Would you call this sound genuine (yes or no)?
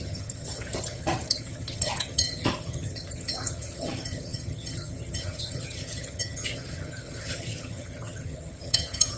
no